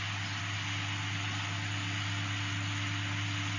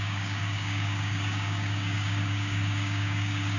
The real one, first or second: first